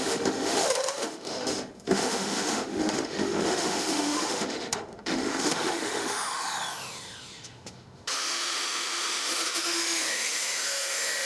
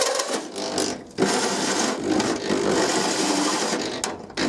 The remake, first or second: first